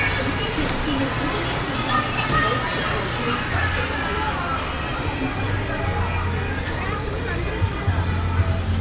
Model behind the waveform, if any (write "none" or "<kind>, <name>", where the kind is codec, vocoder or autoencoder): none